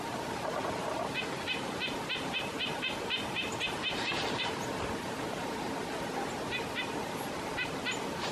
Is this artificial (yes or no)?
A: yes